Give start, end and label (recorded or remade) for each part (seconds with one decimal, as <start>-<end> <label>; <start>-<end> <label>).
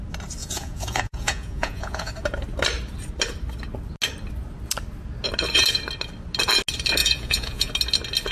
0.0-0.4 recorded; 0.4-2.1 remade; 2.1-7.0 recorded; 7.0-7.7 remade; 7.7-8.3 recorded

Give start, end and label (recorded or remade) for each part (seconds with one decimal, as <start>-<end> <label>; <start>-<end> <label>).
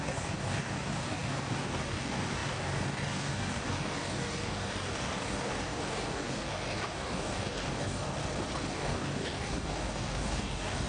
0.0-8.2 remade; 8.2-8.7 recorded; 8.7-10.9 remade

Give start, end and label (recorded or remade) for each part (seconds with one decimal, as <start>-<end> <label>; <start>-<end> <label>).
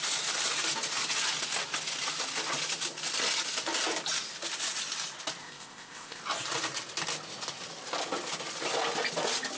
0.0-5.4 recorded; 5.4-6.2 remade; 6.2-9.6 recorded